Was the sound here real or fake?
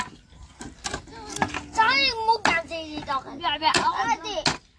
real